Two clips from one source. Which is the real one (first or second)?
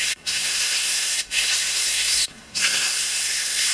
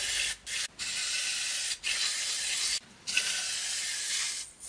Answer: second